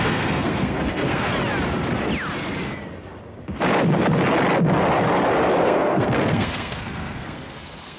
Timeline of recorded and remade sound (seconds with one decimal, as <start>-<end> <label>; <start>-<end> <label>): 0.0-1.3 remade; 1.3-5.6 recorded; 5.6-8.0 remade